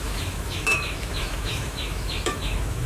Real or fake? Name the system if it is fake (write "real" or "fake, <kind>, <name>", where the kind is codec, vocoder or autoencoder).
fake, autoencoder, DAC-VAE